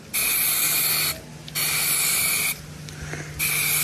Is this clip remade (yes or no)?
no